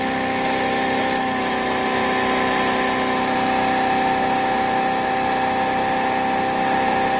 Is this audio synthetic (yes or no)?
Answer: no